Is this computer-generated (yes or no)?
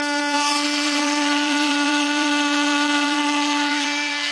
yes